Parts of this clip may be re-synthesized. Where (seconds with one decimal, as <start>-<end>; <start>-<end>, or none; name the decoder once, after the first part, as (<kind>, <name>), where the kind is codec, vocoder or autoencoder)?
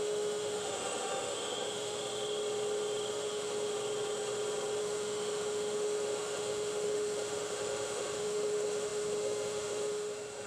0.0-2.0 (autoencoder, DAC-VAE); 3.1-3.7; 4.8-10.5